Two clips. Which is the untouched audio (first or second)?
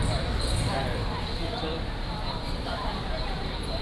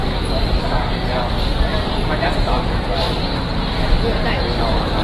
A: second